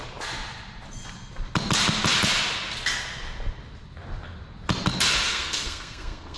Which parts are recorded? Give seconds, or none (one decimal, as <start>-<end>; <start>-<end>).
0.0-5.3